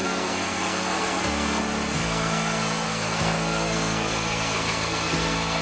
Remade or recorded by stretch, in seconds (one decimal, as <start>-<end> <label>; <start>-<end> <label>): 0.0-1.6 remade; 1.6-2.0 recorded; 2.0-5.6 remade